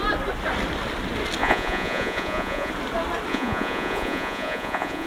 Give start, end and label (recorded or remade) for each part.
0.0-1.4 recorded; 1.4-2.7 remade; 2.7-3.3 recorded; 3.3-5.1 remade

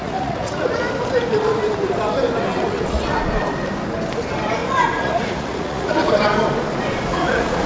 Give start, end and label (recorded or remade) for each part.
0.0-0.8 remade; 0.8-2.5 recorded; 2.5-3.3 remade; 3.3-4.6 recorded; 4.6-6.1 remade; 6.1-7.1 recorded; 7.1-7.7 remade